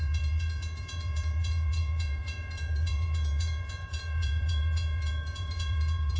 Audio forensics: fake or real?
fake